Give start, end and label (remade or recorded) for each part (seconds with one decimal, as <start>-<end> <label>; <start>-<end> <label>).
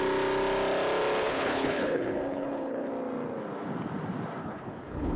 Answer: 0.0-1.2 recorded; 1.2-2.9 remade; 2.9-4.4 recorded; 4.4-5.2 remade